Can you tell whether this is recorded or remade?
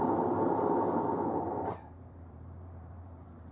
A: remade